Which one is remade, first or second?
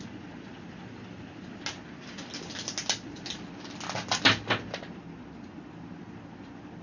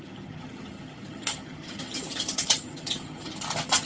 second